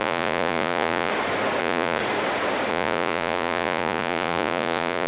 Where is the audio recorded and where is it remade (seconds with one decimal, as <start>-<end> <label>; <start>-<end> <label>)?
0.0-1.1 remade; 1.1-1.6 recorded; 1.6-2.0 remade; 2.0-2.7 recorded; 2.7-5.1 remade